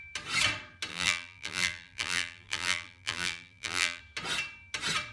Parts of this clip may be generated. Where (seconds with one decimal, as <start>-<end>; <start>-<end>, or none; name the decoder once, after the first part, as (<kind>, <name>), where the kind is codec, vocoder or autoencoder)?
0.9-4.0 (vocoder, BigVGAN v2)